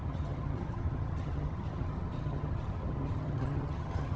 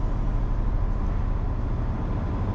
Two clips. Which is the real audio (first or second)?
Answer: second